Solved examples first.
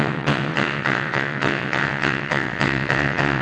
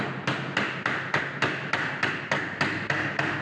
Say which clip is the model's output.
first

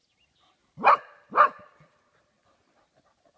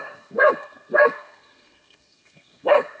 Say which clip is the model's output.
second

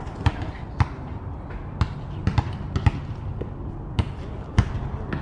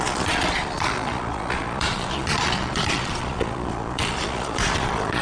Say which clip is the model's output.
second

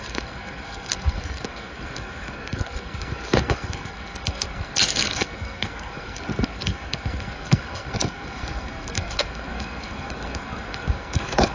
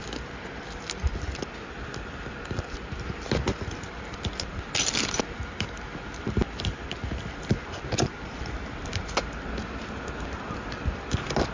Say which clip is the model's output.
first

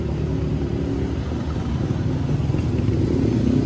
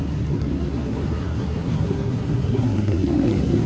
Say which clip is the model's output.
second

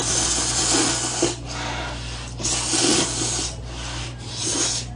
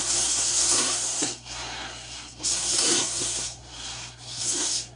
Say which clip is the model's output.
second